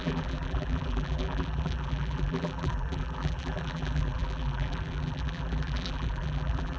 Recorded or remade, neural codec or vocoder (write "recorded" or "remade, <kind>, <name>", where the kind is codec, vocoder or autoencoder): remade, vocoder, BigVGAN v2